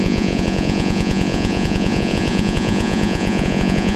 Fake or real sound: fake